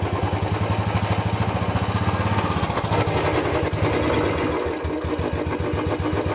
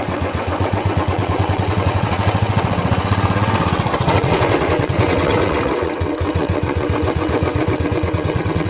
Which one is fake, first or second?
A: second